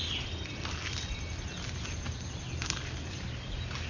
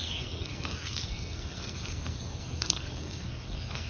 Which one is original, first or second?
first